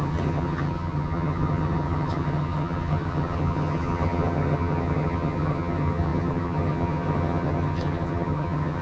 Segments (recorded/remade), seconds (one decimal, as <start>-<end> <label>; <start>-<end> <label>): 0.0-8.8 remade